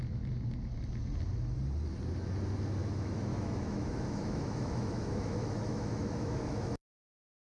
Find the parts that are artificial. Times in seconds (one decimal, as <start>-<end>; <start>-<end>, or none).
2.8-7.0